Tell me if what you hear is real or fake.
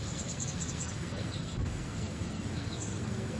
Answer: fake